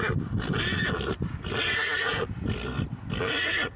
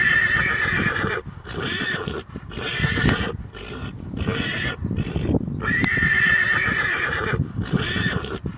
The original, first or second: first